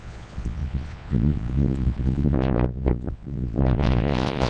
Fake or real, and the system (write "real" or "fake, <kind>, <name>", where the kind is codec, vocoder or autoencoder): fake, vocoder, Vocos